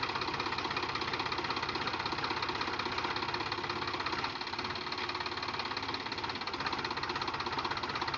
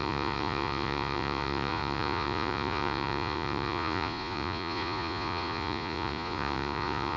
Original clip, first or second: first